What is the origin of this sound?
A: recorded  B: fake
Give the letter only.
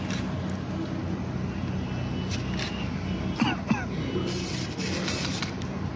A